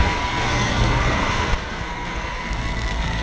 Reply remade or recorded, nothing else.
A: remade